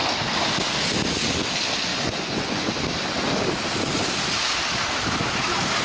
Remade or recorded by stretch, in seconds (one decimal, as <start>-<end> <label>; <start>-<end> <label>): 0.0-1.9 recorded; 1.9-2.7 remade; 2.7-5.8 recorded